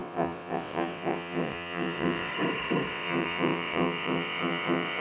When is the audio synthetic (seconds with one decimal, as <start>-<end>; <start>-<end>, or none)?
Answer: 0.0-2.3; 2.9-5.0